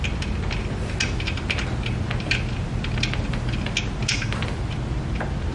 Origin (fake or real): real